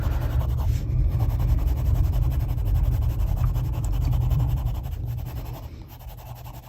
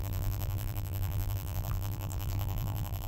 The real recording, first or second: first